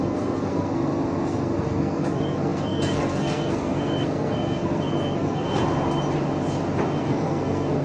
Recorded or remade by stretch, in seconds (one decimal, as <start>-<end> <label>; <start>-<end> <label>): 0.0-5.6 remade; 5.6-7.0 recorded; 7.0-7.8 remade